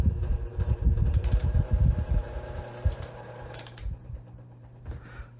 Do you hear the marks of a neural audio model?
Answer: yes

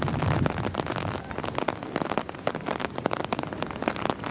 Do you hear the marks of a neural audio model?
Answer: no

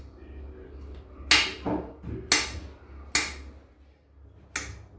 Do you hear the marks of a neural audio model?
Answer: no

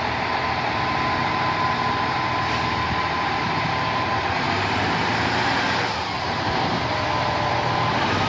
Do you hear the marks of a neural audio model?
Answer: yes